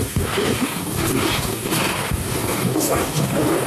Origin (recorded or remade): remade